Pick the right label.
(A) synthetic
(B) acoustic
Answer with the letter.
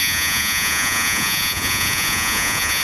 A